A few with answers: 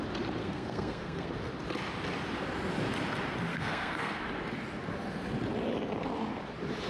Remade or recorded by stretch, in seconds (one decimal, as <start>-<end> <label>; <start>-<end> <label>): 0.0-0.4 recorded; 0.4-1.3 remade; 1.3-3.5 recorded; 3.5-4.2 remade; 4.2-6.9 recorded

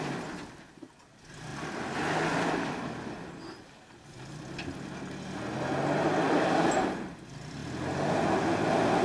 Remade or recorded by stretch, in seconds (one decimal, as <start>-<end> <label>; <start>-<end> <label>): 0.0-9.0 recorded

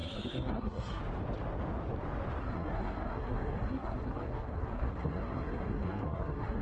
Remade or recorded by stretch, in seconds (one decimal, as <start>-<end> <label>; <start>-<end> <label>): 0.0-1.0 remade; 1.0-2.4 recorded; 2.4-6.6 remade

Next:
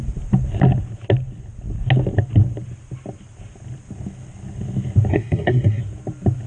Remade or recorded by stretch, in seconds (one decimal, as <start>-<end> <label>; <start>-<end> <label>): 0.0-5.1 recorded; 5.1-5.8 remade; 5.8-6.5 recorded

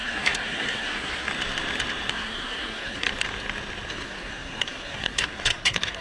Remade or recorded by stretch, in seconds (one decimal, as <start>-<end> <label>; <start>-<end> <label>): 0.0-1.3 remade; 1.3-2.1 recorded; 2.1-3.1 remade; 3.1-3.9 recorded; 3.9-6.0 remade